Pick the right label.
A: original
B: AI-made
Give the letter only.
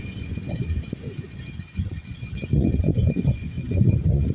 B